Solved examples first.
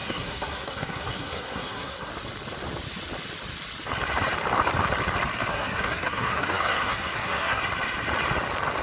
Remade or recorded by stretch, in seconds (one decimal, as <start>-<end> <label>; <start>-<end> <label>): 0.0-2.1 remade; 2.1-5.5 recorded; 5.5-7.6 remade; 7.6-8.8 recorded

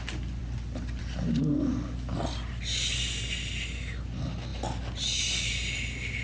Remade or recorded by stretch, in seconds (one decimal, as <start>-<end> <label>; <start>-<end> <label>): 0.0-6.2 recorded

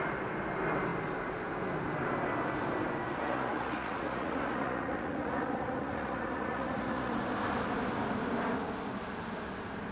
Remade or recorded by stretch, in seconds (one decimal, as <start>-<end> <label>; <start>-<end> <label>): 0.0-3.2 recorded; 3.2-7.1 remade; 7.1-9.9 recorded